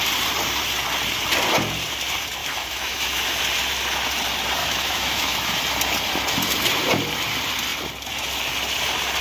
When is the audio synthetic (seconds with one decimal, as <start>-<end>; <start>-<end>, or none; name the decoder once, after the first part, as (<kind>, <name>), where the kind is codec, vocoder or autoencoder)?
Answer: 2.4-3.4 (autoencoder, DAC-VAE); 4.6-5.6